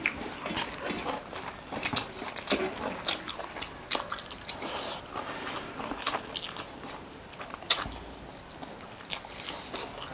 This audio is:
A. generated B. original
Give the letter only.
B